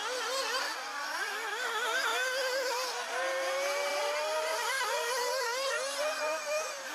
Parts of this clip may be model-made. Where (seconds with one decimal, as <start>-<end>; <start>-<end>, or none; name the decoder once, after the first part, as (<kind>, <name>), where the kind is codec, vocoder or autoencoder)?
2.7-6.9 (vocoder, BigVGAN v2)